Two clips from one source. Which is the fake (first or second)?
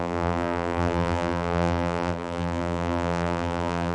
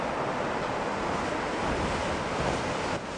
first